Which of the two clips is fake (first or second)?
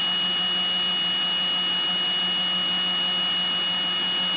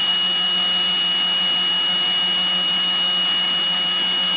second